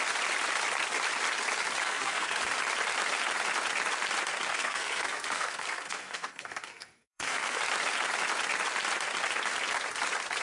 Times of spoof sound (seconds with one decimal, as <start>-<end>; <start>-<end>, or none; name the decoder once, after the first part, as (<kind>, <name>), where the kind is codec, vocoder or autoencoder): 1.8-2.4 (codec, SNAC); 4.5-7.6